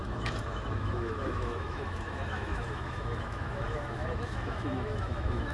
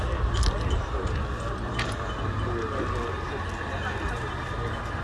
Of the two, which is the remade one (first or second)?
first